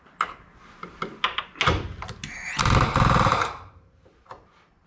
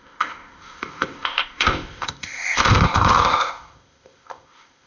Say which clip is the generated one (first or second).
second